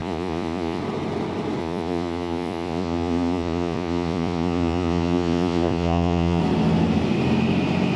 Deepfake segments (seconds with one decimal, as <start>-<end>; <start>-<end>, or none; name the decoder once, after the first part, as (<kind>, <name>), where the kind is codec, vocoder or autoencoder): 0.0-0.8 (vocoder, Vocos); 1.6-6.4